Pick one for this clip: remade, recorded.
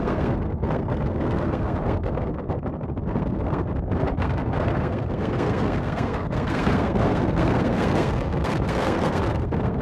remade